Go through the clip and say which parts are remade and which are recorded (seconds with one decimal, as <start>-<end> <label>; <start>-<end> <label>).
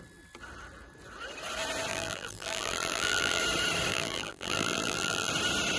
0.0-1.9 recorded; 1.9-3.4 remade; 3.4-3.9 recorded; 3.9-5.3 remade; 5.3-5.8 recorded